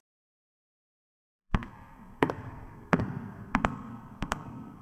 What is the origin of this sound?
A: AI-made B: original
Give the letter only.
A